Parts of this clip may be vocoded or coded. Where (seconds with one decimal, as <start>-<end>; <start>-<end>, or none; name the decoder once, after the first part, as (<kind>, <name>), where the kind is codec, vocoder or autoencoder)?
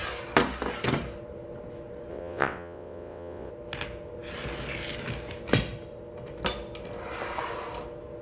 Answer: 2.1-3.5 (vocoder, WaveNeXt)